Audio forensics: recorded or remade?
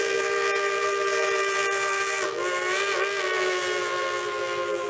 remade